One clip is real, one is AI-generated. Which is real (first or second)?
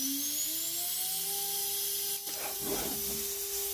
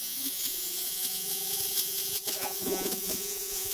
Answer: first